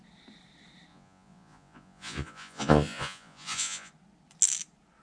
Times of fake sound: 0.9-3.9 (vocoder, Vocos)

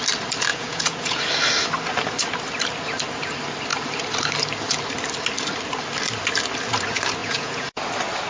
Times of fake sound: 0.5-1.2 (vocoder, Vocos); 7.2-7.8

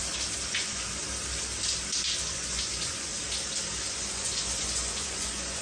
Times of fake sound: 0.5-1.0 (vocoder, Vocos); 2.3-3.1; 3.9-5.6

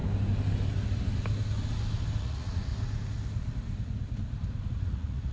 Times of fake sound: 2.2-2.7 (vocoder, Vocos); 4.7-5.3

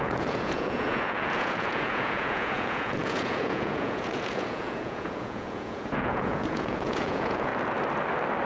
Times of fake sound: 0.0-7.5 (vocoder, Vocos)

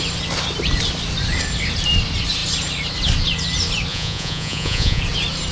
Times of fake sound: 3.9-5.0 (vocoder, Vocos)